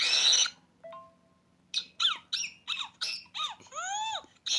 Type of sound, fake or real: real